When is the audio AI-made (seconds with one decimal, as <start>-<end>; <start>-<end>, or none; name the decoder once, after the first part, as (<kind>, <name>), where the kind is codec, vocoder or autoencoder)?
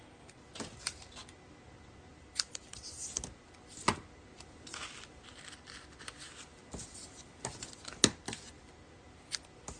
2.1-3.1 (vocoder, BigVGAN v2)